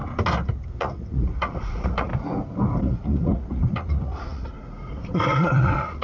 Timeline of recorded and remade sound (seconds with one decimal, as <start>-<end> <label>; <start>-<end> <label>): 0.0-0.8 recorded; 0.8-2.1 remade; 2.1-2.8 recorded; 2.8-6.0 remade